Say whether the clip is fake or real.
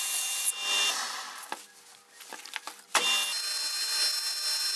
real